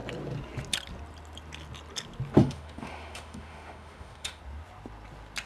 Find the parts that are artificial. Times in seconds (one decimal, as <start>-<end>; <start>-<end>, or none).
2.4-4.4